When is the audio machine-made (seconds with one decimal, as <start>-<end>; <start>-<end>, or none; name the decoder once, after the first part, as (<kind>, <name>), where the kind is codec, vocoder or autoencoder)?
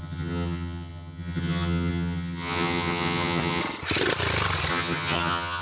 0.0-3.6 (vocoder, HiFi-GAN); 4.7-5.6